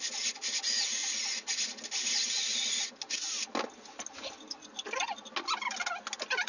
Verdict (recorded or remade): recorded